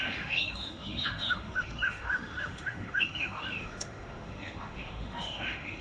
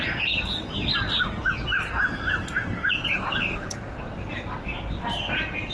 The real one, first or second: second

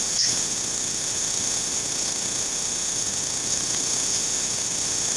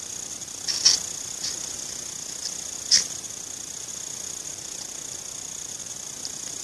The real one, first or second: second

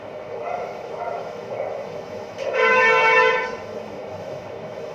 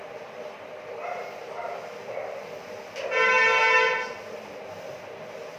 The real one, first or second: second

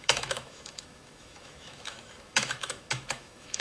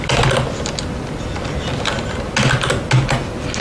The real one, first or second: second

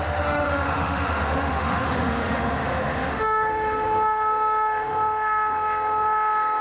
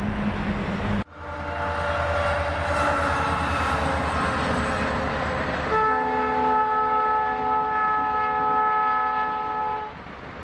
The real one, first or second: second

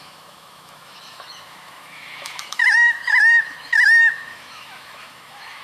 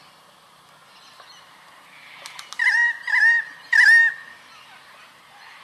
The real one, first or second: second